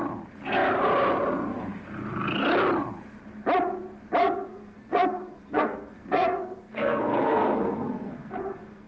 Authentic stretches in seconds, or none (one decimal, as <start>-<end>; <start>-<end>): 0.0-4.2